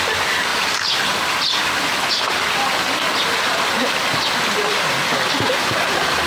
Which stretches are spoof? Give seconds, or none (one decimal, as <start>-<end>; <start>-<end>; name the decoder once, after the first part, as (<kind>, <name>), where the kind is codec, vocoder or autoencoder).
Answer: none